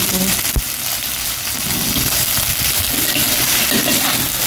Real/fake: real